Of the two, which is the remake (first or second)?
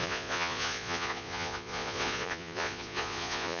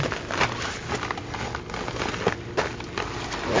first